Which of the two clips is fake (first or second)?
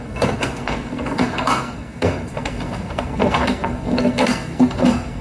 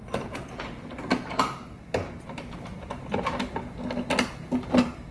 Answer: first